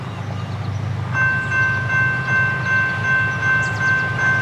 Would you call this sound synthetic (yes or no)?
no